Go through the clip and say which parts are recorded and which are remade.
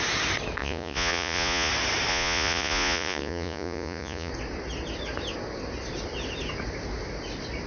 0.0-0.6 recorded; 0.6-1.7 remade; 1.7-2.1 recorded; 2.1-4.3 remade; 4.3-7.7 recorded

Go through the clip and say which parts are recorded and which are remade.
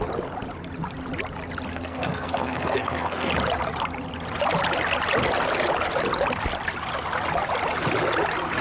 0.0-1.7 recorded; 1.7-3.3 remade; 3.3-8.6 recorded